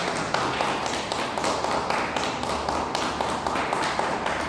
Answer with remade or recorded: recorded